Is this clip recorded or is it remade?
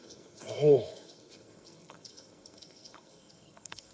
remade